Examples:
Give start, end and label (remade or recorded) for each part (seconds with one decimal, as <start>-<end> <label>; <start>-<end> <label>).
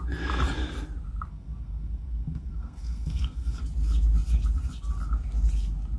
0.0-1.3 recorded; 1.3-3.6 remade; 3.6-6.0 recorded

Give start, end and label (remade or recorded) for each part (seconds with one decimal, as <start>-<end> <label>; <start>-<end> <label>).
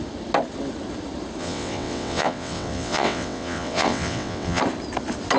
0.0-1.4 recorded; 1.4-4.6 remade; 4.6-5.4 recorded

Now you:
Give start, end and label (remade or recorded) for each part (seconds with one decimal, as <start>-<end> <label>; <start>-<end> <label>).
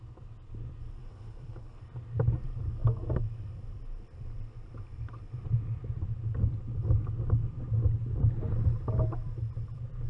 0.0-1.0 recorded; 1.0-1.8 remade; 1.8-10.1 recorded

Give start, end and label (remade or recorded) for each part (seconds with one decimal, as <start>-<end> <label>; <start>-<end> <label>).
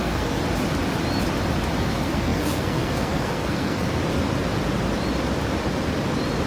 0.0-0.4 remade; 0.4-1.8 recorded; 1.8-4.0 remade; 4.0-6.5 recorded